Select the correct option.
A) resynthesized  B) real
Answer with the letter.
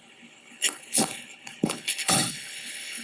A